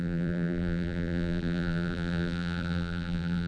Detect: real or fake fake